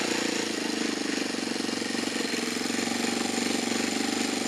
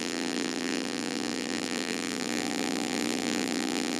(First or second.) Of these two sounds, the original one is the first